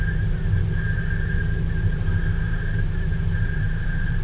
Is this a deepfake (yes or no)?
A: yes